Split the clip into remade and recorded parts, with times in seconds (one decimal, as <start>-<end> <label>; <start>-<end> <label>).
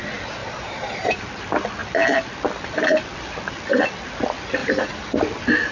0.0-0.4 recorded; 0.4-1.2 remade; 1.2-4.6 recorded; 4.6-5.2 remade; 5.2-5.7 recorded